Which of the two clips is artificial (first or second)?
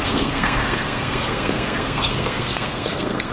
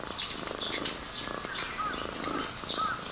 first